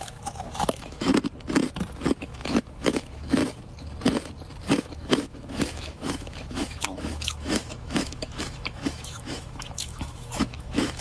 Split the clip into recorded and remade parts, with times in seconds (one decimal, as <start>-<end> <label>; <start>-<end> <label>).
0.0-1.1 remade; 1.1-2.2 recorded; 2.2-3.4 remade; 3.4-4.8 recorded; 4.8-11.0 remade

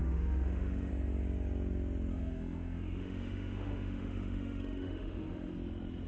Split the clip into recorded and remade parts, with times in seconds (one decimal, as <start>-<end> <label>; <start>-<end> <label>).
0.0-0.9 remade; 0.9-2.1 recorded; 2.1-5.5 remade; 5.5-6.1 recorded

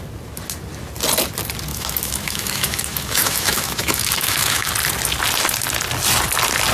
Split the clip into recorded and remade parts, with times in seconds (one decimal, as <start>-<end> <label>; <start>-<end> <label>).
0.0-1.7 recorded; 1.7-4.7 remade; 4.7-6.7 recorded

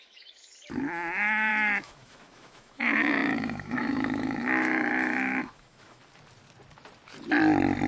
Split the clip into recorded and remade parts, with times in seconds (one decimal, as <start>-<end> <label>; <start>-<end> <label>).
0.0-6.0 remade; 6.0-7.9 recorded